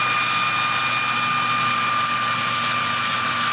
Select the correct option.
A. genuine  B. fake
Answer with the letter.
A